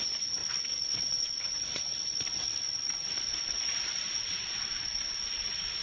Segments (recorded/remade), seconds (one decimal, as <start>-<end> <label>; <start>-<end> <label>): 0.0-0.4 recorded; 0.4-1.4 remade; 1.4-1.9 recorded; 1.9-5.3 remade; 5.3-5.8 recorded